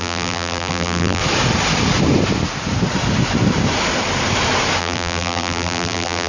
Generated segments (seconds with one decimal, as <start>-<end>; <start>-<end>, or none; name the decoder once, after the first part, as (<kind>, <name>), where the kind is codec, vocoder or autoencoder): 0.0-1.2 (vocoder, BigVGAN v2); 4.8-6.3